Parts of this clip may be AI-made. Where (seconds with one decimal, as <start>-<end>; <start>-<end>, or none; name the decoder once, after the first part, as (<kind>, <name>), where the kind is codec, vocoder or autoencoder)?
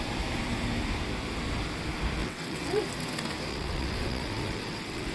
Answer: 2.2-2.8 (vocoder, WaveNeXt); 3.5-5.1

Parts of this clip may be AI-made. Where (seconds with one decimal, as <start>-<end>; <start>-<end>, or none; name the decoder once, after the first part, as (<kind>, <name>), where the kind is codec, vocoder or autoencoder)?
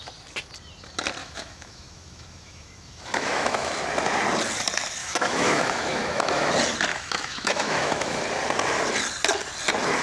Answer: 1.2-3.7 (autoencoder, DAC-VAE); 5.0-6.5; 6.9-8.2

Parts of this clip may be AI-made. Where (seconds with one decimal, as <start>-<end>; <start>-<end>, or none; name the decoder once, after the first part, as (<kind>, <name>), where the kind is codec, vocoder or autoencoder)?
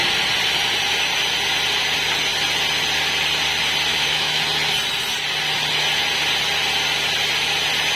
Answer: 3.9-4.4 (autoencoder, DAC-VAE)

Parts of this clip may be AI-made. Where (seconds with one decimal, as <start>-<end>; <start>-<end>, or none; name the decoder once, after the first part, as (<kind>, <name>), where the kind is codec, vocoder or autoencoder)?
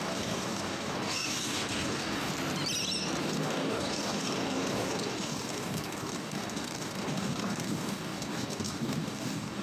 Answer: 0.0-2.3 (codec, DAC); 3.2-9.6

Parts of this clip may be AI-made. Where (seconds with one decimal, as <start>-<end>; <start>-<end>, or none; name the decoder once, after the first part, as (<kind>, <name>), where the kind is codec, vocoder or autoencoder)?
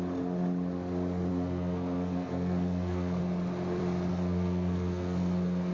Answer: 1.3-3.2 (codec, SNAC); 4.1-5.7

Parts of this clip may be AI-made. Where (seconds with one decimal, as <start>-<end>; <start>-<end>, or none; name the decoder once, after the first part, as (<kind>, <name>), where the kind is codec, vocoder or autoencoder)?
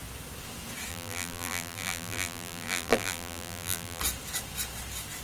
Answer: 0.9-4.0 (vocoder, BigVGAN v2)